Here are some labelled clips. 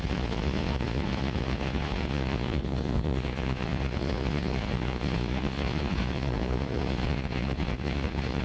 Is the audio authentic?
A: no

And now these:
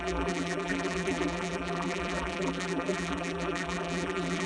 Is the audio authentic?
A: no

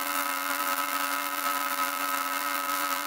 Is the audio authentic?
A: no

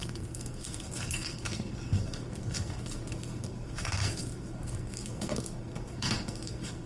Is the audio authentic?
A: no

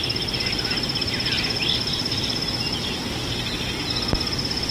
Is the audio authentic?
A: yes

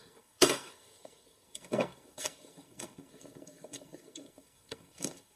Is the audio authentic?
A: no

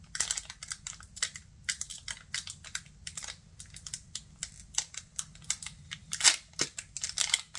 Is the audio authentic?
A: yes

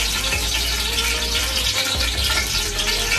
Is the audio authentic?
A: no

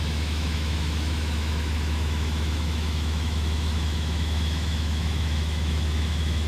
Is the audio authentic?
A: no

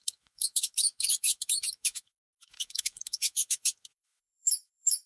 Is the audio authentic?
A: no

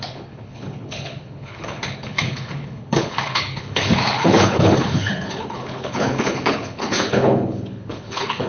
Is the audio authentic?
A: no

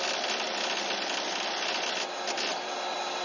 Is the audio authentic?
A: yes